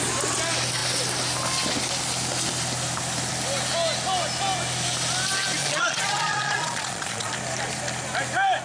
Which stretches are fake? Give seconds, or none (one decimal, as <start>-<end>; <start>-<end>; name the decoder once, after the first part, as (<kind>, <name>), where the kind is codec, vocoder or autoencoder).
5.6-7.3 (vocoder, Vocos)